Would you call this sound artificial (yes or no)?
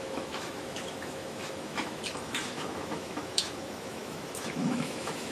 yes